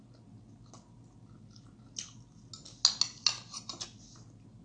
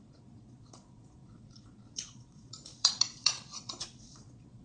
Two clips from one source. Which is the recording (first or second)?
first